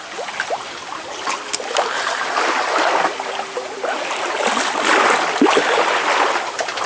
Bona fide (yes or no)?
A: yes